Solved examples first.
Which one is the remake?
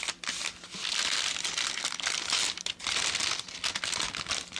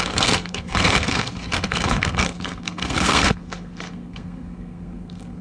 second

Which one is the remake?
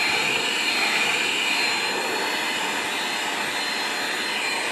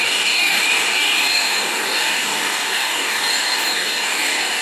second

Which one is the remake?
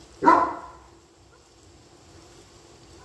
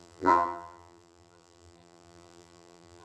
second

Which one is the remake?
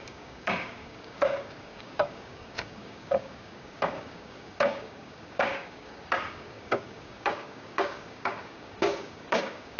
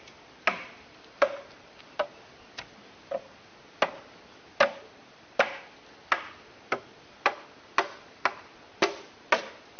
first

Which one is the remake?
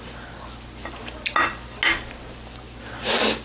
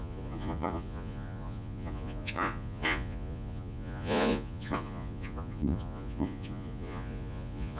second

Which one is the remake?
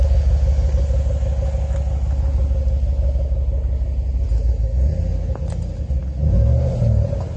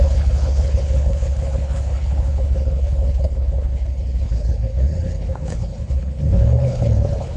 second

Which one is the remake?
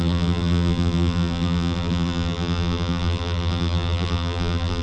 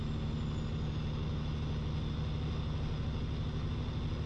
first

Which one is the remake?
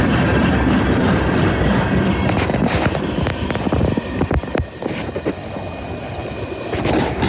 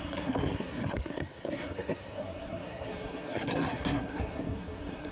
second